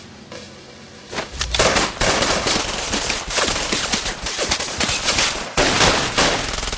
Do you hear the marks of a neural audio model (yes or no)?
no